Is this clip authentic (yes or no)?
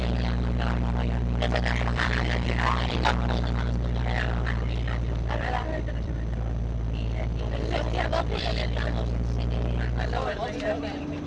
no